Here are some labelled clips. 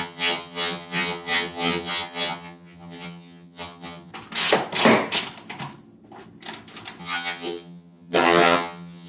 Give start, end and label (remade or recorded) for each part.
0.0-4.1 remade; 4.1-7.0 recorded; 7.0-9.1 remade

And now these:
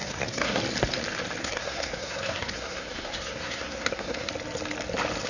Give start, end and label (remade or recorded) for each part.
0.0-0.6 remade; 0.6-1.4 recorded; 1.4-4.3 remade; 4.3-5.3 recorded

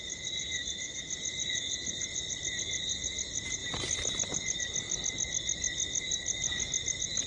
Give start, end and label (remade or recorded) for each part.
0.0-7.3 recorded

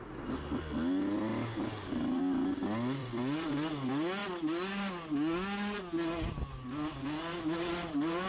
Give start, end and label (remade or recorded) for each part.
0.0-1.3 recorded; 1.3-2.2 remade; 2.2-3.0 recorded; 3.0-3.5 remade; 3.5-8.3 recorded